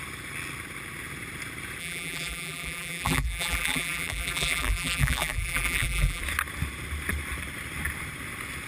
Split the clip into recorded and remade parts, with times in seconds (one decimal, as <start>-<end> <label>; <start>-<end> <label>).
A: 0.0-1.8 recorded; 1.8-6.2 remade; 6.2-8.7 recorded